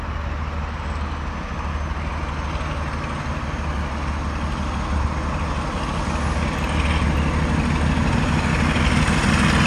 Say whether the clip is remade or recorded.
recorded